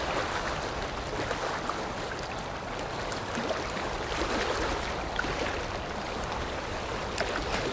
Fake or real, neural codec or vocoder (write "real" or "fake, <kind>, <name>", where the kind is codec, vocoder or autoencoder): real